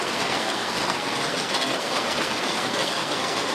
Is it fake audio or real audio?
fake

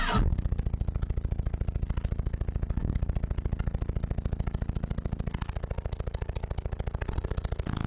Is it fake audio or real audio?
real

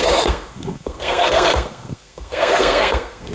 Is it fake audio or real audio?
fake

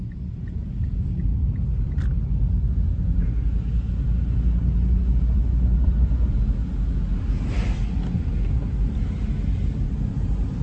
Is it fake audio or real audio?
real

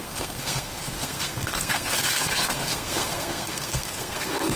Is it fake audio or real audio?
fake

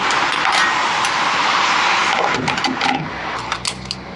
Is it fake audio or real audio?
real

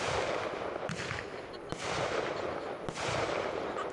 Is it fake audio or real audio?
real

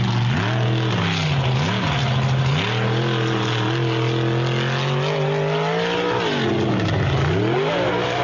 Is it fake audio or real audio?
real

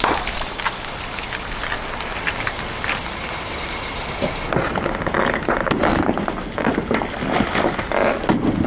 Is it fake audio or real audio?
real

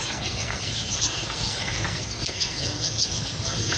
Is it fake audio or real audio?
fake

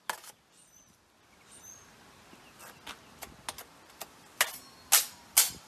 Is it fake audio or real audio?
real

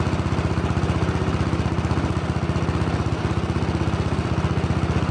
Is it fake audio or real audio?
real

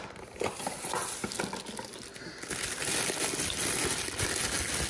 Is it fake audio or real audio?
real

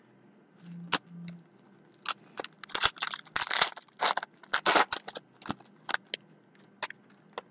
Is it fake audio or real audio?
real